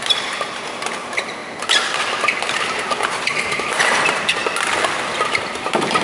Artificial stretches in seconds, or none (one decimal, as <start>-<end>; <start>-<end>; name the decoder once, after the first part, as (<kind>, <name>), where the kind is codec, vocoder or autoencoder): 0.0-1.4 (vocoder, BigVGAN v2); 2.4-4.4; 5.2-6.0